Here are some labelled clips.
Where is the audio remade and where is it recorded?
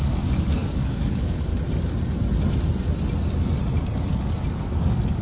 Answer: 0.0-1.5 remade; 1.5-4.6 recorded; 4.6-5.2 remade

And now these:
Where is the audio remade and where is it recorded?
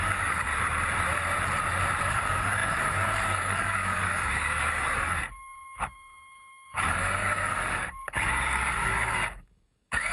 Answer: 0.0-0.5 remade; 0.5-2.0 recorded; 2.0-10.1 remade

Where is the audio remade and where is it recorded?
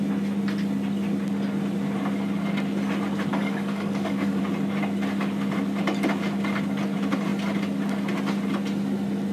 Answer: 0.0-3.3 recorded; 3.3-4.4 remade; 4.4-9.3 recorded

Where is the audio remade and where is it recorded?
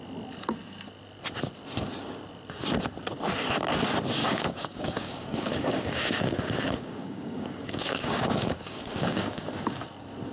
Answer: 0.0-4.2 recorded; 4.2-9.5 remade; 9.5-10.3 recorded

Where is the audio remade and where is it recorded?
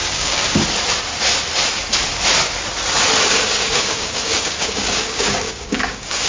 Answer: 0.0-0.6 remade; 0.6-3.3 recorded; 3.3-6.3 remade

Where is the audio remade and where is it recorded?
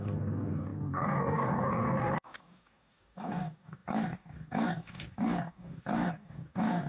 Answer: 0.0-6.9 remade